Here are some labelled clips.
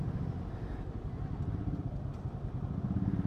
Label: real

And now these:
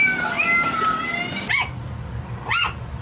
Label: real